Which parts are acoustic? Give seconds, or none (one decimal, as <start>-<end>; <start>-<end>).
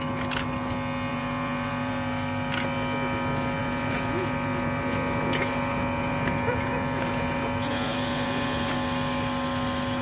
0.0-1.1; 1.9-3.6; 8.7-10.0